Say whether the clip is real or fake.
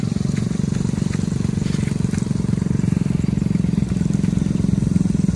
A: real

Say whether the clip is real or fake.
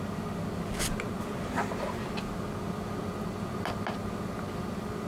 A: real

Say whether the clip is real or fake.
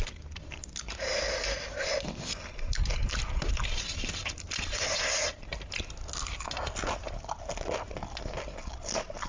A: real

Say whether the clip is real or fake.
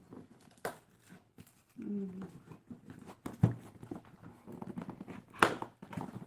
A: real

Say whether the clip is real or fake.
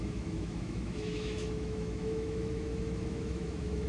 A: fake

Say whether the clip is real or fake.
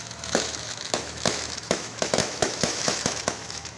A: fake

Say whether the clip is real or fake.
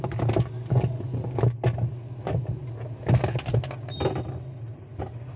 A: real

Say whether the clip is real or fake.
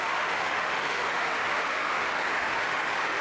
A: fake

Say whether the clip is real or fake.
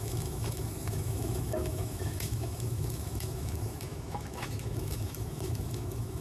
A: fake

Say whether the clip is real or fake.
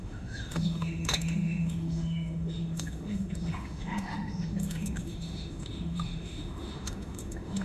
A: fake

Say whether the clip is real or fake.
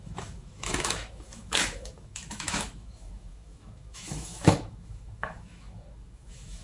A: fake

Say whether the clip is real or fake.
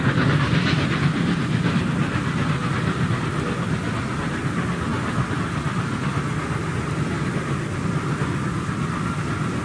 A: real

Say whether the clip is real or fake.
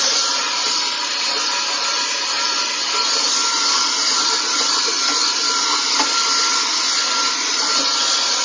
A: real